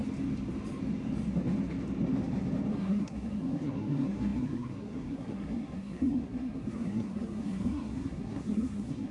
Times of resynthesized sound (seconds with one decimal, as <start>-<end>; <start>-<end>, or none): 2.7-9.1